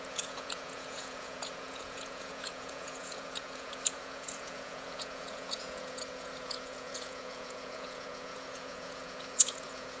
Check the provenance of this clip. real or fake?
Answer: fake